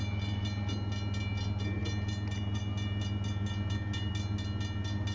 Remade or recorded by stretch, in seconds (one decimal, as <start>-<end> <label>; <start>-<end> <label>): 0.0-5.1 recorded